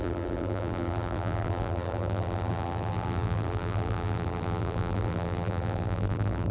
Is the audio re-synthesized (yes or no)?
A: yes